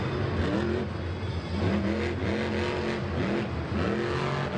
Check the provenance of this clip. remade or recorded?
recorded